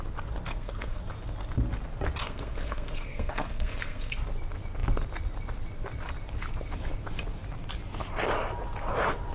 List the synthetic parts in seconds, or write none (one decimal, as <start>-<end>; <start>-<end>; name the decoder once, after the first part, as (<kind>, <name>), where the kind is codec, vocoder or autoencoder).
0.5-1.0 (codec, SNAC); 2.2-4.2